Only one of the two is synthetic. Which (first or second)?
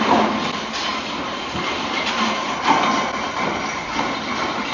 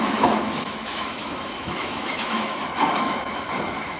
second